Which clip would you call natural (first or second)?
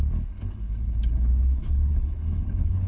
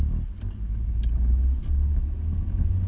second